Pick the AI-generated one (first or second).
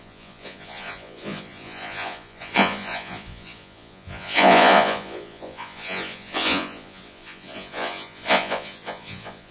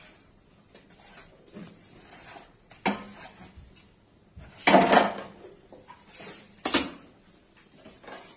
first